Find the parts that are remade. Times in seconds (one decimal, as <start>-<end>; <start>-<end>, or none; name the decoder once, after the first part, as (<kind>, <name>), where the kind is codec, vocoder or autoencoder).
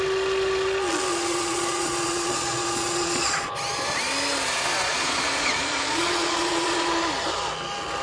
1.1-3.5 (vocoder, Vocos); 4.8-6.9